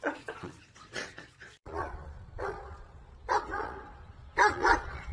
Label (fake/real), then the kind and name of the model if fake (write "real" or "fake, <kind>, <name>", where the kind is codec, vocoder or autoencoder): fake, vocoder, Vocos